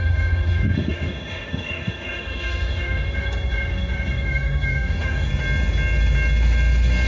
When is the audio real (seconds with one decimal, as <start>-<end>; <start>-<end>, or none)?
5.3-7.1